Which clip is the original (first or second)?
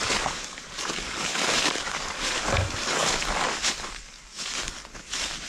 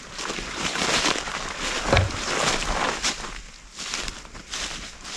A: second